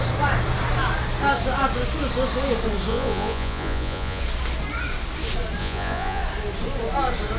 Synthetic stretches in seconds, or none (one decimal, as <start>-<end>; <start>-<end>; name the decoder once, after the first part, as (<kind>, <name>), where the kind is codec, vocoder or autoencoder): 2.9-4.2 (vocoder, Vocos); 5.6-6.2